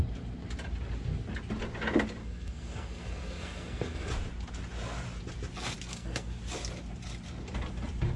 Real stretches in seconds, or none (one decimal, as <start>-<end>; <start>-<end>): 0.0-2.2; 4.1-5.9; 6.4-8.2